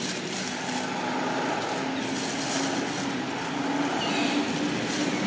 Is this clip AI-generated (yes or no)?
no